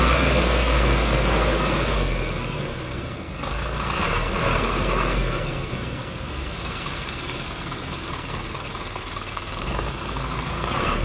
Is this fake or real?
fake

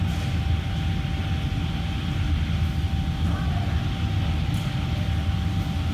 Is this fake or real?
real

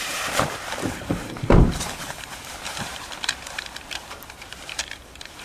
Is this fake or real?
fake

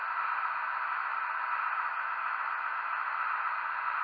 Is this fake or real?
real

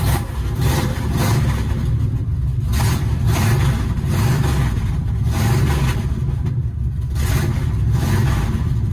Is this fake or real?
fake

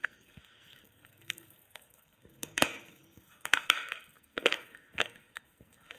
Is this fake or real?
fake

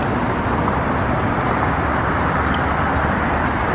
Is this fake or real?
real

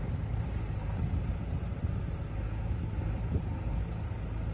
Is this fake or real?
real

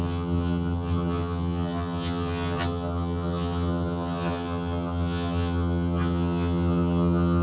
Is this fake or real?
fake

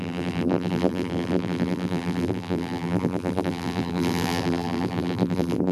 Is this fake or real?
fake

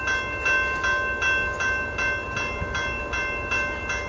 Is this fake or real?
real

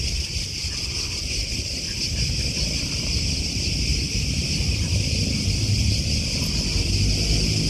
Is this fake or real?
real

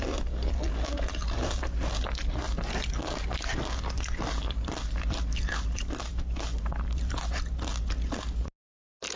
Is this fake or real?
real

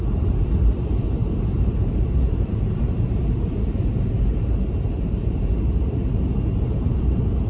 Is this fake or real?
fake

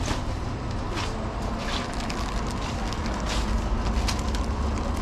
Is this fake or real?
real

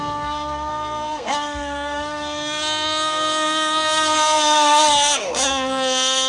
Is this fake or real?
fake